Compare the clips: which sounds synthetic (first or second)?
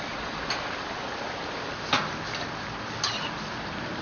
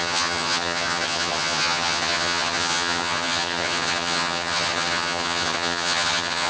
second